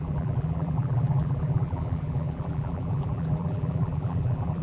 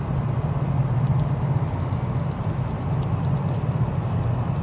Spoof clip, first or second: first